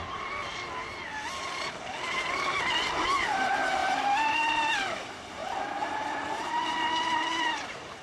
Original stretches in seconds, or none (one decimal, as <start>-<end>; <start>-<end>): 0.4-3.0